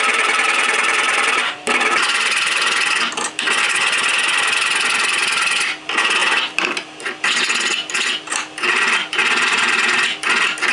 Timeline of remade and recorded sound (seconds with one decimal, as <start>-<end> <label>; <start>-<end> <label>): 0.0-10.7 recorded